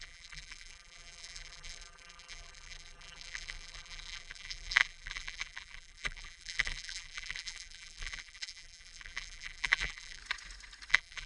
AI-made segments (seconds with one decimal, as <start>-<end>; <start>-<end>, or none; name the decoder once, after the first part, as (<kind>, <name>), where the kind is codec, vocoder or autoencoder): 0.0-10.2 (vocoder, BigVGAN v2); 10.9-11.3